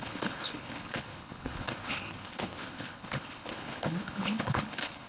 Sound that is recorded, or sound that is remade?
remade